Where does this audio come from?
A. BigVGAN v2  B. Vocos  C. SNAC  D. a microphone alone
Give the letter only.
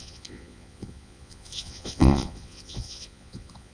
B